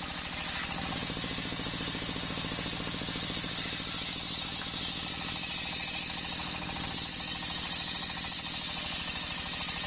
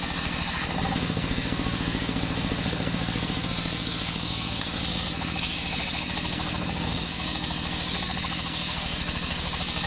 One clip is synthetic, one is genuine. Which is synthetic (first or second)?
second